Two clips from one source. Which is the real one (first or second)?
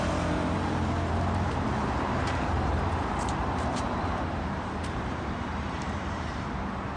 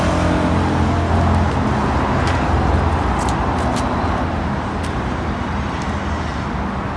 second